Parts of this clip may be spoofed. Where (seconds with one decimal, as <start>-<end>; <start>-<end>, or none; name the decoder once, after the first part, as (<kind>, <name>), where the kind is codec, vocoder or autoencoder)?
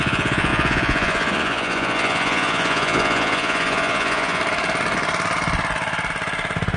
0.0-4.4 (vocoder, Vocos)